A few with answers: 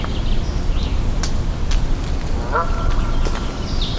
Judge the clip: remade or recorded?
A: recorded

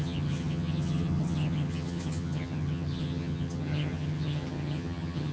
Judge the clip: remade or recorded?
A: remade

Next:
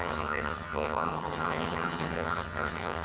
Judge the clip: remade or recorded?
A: remade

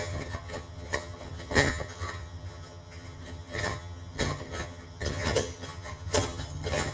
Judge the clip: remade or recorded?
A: remade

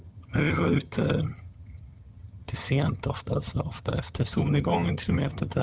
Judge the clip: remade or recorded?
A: remade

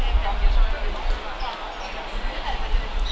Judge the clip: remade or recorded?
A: recorded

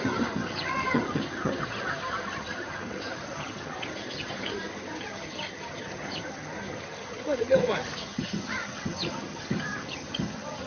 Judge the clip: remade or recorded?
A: remade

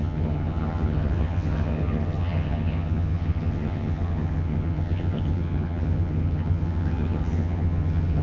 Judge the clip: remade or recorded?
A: remade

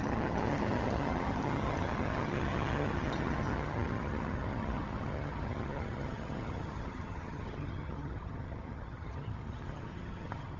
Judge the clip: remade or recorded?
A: remade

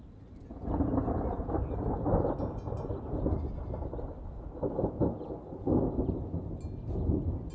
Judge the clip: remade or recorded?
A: recorded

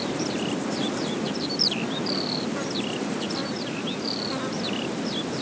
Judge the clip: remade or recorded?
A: recorded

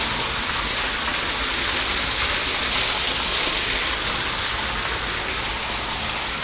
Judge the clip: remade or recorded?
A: recorded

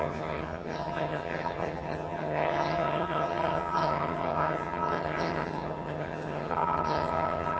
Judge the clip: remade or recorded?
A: remade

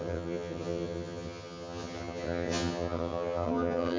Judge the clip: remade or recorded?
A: remade